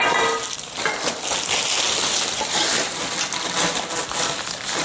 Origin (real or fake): real